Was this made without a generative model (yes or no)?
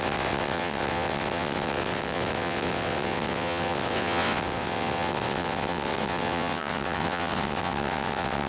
no